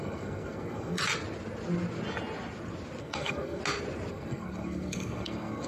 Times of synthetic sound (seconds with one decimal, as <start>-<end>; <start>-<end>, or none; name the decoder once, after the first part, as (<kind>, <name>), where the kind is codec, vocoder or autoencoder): 0.0-1.0 (codec, SNAC); 3.0-3.6; 4.1-5.7